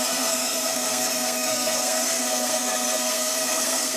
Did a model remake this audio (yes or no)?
yes